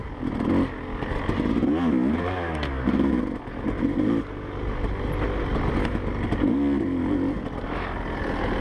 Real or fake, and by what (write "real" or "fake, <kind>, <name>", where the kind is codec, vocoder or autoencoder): real